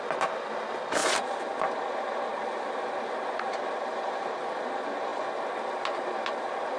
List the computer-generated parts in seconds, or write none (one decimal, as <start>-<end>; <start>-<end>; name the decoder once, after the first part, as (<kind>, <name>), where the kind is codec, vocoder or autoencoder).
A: 2.3-4.4 (vocoder, BigVGAN v2)